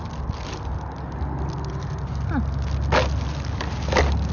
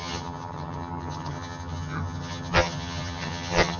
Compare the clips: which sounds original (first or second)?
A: first